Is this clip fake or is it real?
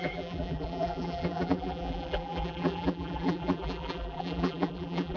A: fake